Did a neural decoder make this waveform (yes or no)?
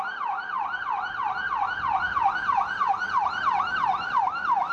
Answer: no